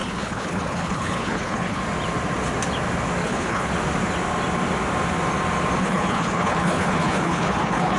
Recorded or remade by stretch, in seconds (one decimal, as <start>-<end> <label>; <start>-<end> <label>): 0.0-1.8 remade; 1.8-3.2 recorded; 3.2-3.7 remade; 3.7-5.8 recorded; 5.8-8.0 remade